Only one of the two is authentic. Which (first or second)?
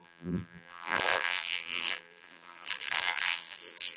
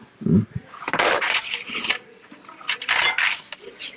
second